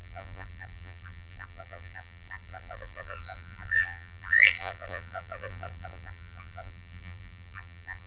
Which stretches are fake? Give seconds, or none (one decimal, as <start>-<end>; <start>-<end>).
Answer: 0.0-8.1